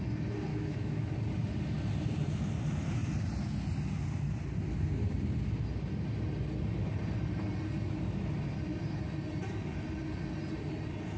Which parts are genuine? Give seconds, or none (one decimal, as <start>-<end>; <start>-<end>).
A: 0.0-0.5; 1.1-11.2